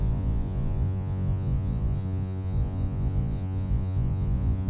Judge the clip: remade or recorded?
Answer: remade